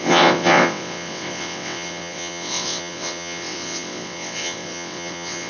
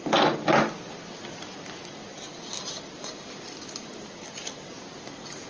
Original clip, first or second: second